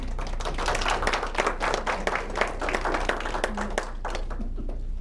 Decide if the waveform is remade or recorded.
recorded